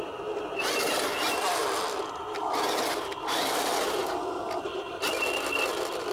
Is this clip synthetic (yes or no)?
no